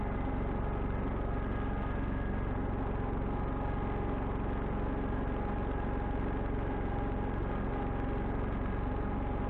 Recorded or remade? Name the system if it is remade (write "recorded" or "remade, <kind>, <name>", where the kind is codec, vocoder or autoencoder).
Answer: recorded